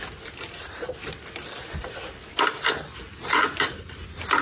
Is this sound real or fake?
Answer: real